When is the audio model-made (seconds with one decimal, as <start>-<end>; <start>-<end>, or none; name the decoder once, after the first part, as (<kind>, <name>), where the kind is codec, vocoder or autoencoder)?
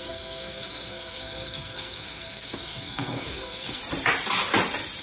0.0-3.8 (codec, SNAC)